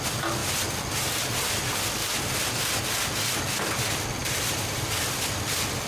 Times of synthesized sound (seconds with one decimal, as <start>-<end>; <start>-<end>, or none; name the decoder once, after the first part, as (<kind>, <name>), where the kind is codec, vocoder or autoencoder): 0.4-0.9 (vocoder, BigVGAN v2); 2.0-2.8; 4.2-5.5